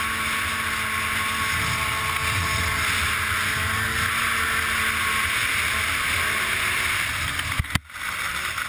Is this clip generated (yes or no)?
no